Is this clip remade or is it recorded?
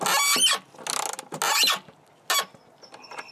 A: recorded